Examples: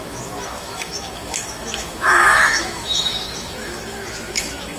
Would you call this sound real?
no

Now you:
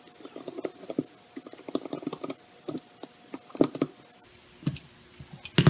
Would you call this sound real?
yes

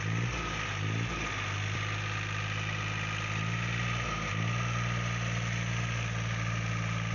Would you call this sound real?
yes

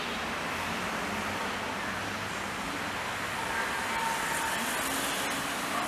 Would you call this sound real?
yes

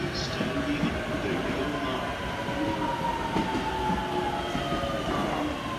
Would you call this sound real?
yes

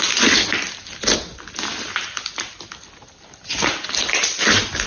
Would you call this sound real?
yes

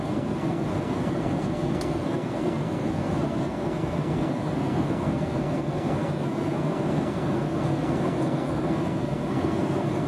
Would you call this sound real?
no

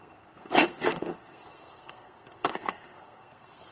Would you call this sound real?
no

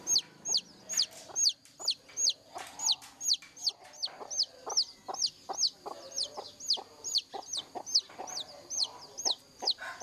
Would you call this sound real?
yes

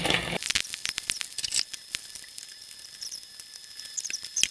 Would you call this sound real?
yes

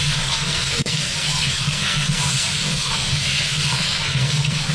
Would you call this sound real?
no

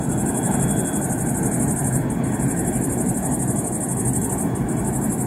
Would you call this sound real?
yes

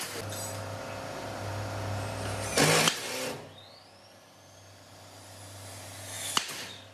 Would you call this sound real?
yes